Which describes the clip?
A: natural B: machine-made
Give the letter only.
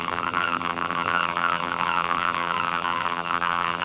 B